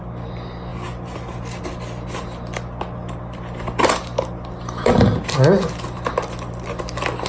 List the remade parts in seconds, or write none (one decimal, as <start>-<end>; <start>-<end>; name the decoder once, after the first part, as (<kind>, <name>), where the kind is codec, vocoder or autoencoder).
none